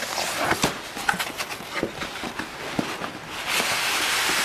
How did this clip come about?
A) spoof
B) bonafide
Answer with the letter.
B